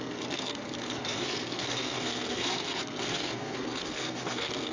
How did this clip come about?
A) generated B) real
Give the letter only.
A